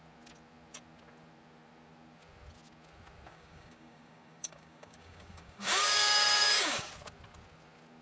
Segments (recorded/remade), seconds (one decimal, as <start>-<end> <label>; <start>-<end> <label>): 0.0-3.3 recorded; 3.3-6.9 remade; 6.9-8.0 recorded